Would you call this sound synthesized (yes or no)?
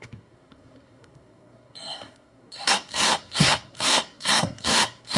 yes